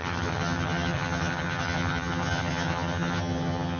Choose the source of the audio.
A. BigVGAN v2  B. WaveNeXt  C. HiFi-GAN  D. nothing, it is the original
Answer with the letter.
C